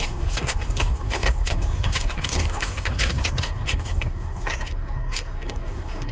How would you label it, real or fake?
fake